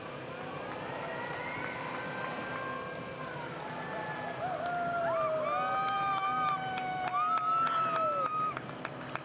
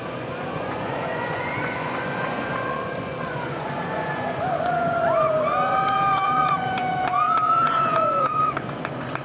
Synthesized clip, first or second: second